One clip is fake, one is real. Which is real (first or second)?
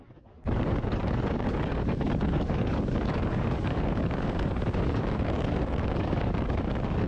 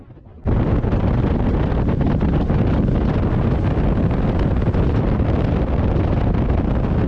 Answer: second